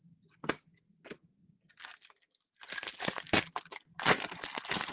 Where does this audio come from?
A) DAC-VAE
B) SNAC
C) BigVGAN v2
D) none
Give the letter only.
D